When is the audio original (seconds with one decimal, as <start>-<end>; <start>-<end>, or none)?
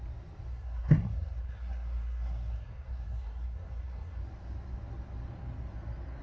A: 0.0-0.5; 4.2-6.2